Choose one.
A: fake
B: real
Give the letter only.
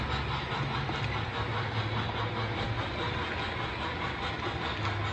B